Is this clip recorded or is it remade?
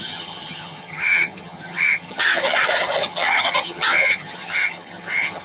remade